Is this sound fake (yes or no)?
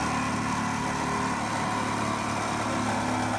no